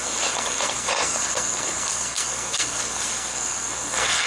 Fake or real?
fake